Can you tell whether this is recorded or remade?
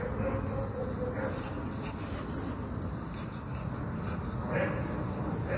recorded